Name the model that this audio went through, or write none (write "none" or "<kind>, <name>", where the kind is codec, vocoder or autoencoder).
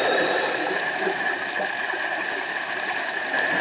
vocoder, BigVGAN v2